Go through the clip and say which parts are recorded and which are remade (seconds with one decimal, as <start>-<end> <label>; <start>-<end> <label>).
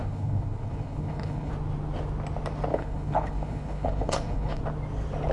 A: 0.0-1.5 remade; 1.5-2.7 recorded; 2.7-4.6 remade; 4.6-5.3 recorded